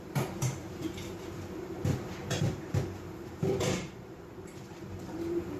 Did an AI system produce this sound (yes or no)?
yes